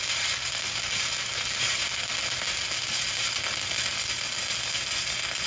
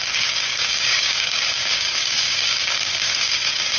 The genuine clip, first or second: first